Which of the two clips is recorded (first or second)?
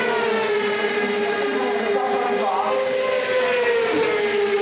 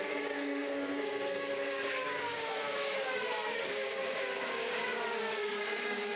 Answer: first